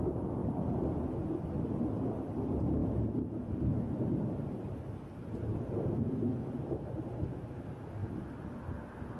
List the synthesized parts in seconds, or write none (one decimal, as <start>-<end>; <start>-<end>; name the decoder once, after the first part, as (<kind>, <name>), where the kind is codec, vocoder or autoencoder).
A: 2.8-3.6 (vocoder, Vocos)